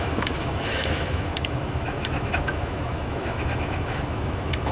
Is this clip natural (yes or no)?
no